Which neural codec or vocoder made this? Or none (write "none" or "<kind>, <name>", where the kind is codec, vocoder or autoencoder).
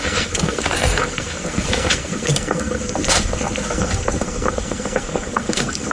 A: codec, SNAC